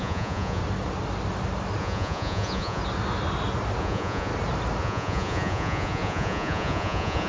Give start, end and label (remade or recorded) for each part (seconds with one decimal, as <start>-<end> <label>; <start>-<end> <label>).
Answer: 0.0-0.6 remade; 0.6-1.8 recorded; 1.8-2.8 remade; 2.8-3.8 recorded; 3.8-4.3 remade; 4.3-4.8 recorded; 4.8-7.3 remade